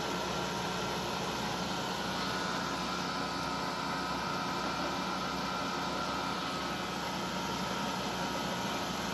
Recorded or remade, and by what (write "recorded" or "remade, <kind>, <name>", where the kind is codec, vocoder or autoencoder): recorded